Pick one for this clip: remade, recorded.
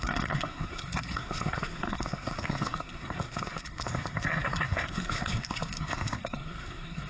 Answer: remade